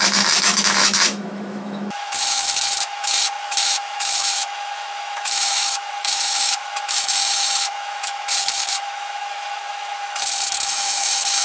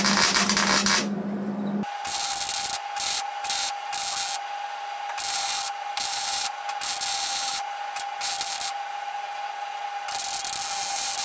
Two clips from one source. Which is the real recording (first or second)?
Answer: second